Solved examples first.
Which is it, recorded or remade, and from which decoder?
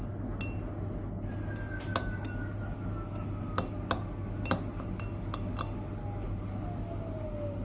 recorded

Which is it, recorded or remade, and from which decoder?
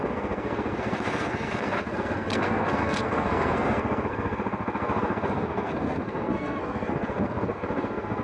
remade, codec, SNAC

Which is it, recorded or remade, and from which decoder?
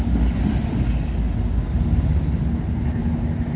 recorded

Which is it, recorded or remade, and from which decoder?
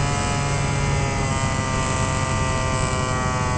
recorded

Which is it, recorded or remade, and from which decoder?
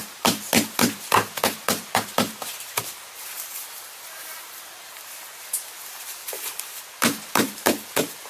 remade, vocoder, BigVGAN v2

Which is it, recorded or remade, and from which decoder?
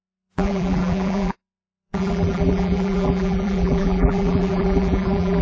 remade, vocoder, BigVGAN v2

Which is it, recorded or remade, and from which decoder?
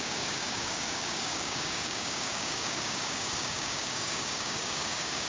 remade, codec, DAC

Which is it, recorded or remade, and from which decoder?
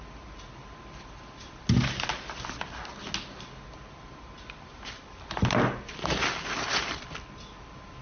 recorded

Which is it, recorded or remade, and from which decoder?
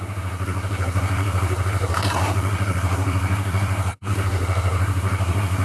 remade, codec, SNAC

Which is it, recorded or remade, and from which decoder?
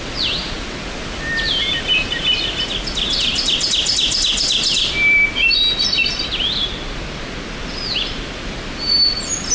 recorded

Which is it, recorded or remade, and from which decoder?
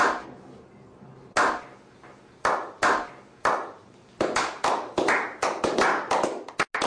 recorded